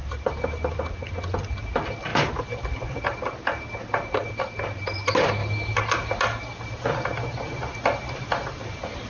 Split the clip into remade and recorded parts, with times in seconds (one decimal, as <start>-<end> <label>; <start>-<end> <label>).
0.0-0.8 remade; 0.8-2.1 recorded; 2.1-3.2 remade; 3.2-9.1 recorded